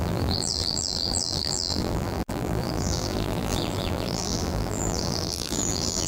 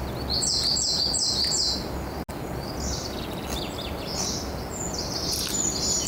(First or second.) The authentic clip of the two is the second